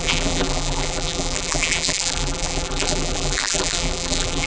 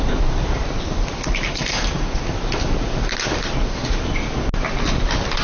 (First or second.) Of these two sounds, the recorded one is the second